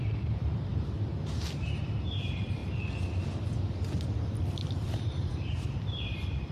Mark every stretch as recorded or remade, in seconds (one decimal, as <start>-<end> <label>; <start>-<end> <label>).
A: 0.0-2.6 remade; 2.6-4.4 recorded; 4.4-6.5 remade